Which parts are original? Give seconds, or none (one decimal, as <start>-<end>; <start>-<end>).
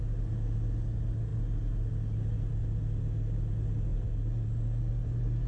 0.0-5.5